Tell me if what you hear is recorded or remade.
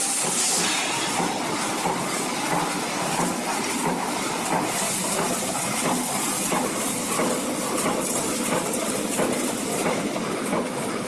recorded